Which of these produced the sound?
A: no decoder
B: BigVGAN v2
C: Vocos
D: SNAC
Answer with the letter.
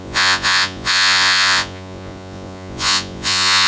C